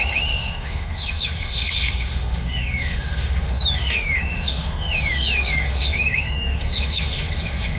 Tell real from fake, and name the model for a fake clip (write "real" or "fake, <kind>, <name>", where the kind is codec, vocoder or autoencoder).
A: fake, autoencoder, DAC-VAE